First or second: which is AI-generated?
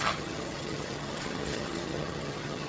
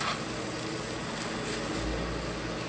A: first